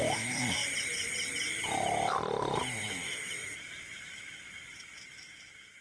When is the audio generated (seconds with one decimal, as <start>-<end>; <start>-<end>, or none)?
0.0-0.6; 2.8-5.8

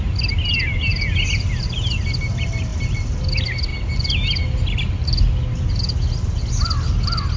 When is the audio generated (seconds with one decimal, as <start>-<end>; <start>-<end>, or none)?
2.7-3.2

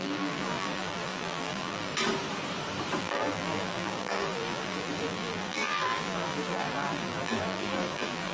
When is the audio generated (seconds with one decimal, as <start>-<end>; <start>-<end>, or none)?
0.0-1.9; 3.0-8.3

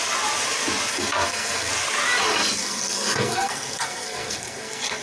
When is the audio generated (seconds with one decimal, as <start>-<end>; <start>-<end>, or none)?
0.9-1.7; 2.6-5.0

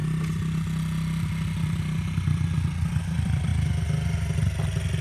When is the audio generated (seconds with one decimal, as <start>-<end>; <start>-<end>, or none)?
3.0-3.5

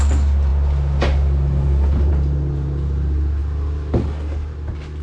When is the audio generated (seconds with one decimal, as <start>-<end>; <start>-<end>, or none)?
none